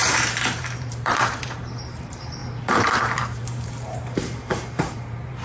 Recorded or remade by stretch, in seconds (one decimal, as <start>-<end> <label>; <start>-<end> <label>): 0.0-5.4 remade